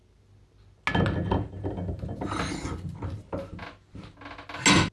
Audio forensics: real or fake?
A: real